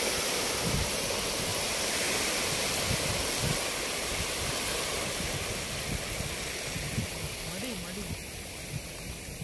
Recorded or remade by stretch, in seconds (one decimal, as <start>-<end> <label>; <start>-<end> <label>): 0.0-1.5 recorded; 1.5-4.5 remade; 4.5-9.4 recorded